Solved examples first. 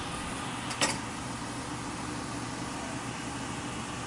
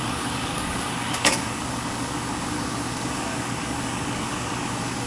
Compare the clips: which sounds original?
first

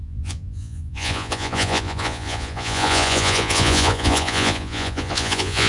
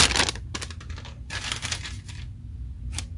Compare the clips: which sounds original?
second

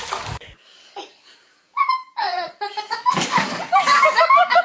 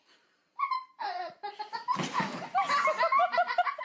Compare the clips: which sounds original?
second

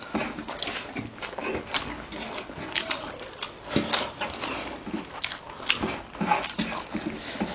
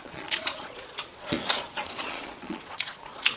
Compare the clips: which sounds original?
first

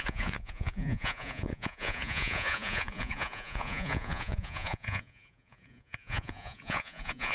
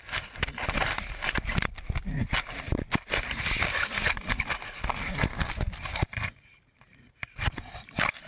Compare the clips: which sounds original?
second